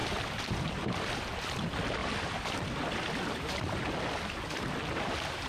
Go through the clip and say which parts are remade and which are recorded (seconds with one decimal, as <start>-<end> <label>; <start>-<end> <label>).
0.0-1.5 remade; 1.5-2.0 recorded; 2.0-5.5 remade